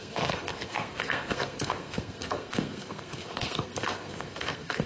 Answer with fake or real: fake